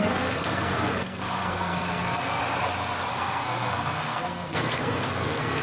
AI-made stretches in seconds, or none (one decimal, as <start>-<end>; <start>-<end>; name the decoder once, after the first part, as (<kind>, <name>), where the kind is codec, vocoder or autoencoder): 0.0-2.4 (codec, SNAC); 3.1-5.6